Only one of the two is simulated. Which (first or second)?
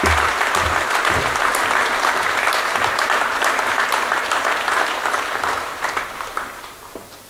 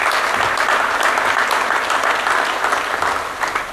first